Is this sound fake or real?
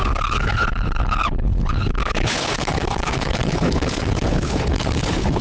fake